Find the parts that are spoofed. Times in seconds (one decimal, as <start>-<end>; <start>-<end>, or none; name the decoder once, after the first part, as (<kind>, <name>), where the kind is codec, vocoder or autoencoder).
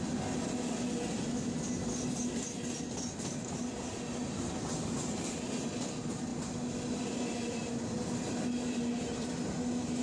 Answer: none